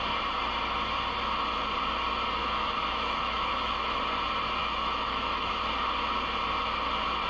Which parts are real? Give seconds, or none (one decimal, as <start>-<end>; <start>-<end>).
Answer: 0.0-2.4; 4.0-4.6; 5.5-7.3